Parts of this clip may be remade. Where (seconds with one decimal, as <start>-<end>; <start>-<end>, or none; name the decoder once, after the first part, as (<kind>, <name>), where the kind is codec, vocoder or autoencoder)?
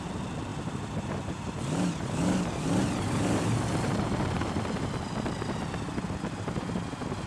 0.5-4.9 (vocoder, BigVGAN v2)